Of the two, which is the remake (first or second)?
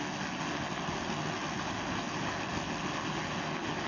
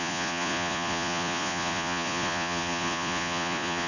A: second